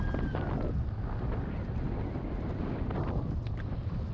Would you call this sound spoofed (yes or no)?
no